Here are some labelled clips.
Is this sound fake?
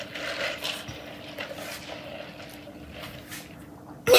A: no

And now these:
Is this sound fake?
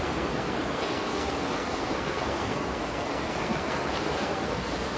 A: yes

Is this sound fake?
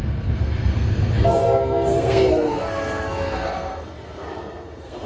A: yes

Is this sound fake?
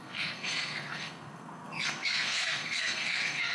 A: yes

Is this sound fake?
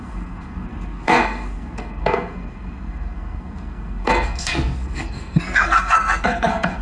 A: yes